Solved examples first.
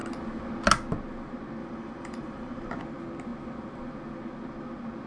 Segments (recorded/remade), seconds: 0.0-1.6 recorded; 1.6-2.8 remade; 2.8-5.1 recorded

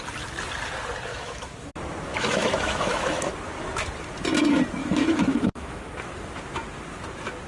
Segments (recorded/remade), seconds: 0.0-1.1 recorded; 1.1-1.7 remade; 1.7-2.1 recorded; 2.1-3.3 remade; 3.3-4.8 recorded; 4.8-5.8 remade; 5.8-7.5 recorded

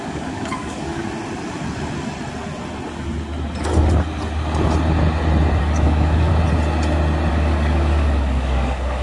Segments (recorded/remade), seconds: 0.0-1.0 remade; 1.0-5.6 recorded; 5.6-6.3 remade; 6.3-7.3 recorded; 7.3-9.0 remade

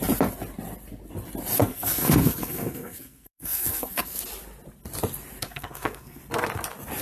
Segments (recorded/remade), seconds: 0.0-1.6 recorded; 1.6-4.2 remade; 4.2-5.4 recorded; 5.4-6.2 remade; 6.2-7.0 recorded

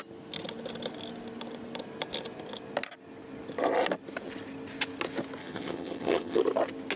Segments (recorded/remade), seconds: 0.0-5.4 recorded; 5.4-6.4 remade; 6.4-7.0 recorded